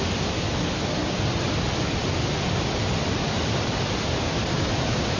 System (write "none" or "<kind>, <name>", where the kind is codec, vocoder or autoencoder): vocoder, BigVGAN v2